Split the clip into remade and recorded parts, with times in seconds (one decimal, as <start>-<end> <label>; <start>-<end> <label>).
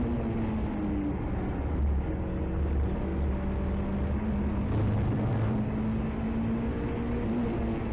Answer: 0.0-7.9 recorded